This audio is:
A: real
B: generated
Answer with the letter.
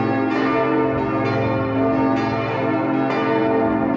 A